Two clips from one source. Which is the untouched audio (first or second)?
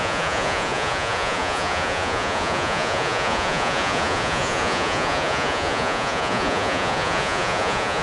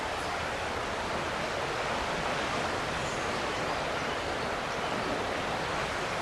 second